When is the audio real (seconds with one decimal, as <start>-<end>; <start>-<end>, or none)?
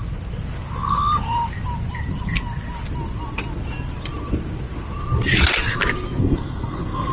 0.0-6.2